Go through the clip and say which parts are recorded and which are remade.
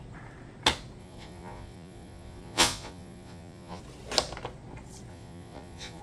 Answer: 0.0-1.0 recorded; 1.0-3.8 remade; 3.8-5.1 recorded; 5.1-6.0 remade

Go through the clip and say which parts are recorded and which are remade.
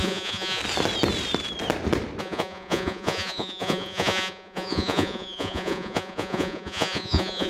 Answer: 0.0-0.6 remade; 0.6-2.2 recorded; 2.2-7.5 remade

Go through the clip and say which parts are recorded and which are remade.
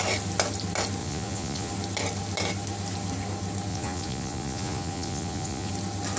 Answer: 0.0-1.0 recorded; 1.0-1.7 remade; 1.7-3.7 recorded; 3.7-5.7 remade; 5.7-6.2 recorded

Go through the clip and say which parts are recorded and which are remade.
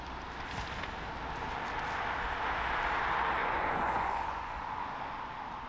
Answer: 0.0-3.4 recorded; 3.4-4.9 remade; 4.9-5.7 recorded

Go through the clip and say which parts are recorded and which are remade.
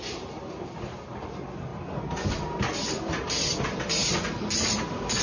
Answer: 0.0-5.2 recorded